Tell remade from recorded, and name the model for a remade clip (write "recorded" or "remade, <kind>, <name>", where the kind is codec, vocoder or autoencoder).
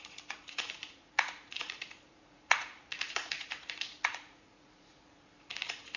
remade, vocoder, Vocos